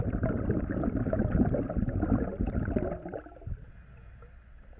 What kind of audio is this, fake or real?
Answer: real